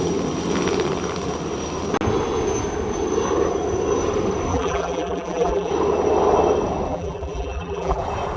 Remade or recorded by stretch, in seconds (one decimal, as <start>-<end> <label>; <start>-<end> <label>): 0.0-4.5 recorded; 4.5-5.7 remade; 5.7-6.9 recorded; 6.9-8.0 remade; 8.0-8.4 recorded